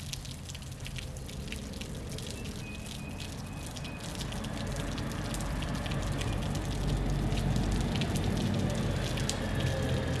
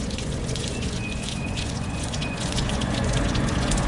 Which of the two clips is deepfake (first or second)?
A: second